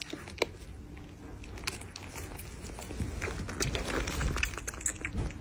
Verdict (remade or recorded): recorded